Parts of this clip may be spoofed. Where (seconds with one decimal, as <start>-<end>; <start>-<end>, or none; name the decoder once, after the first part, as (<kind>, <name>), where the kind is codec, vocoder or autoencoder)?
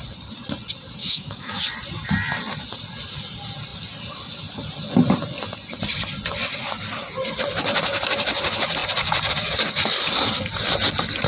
1.0-1.6 (autoencoder, DAC-VAE)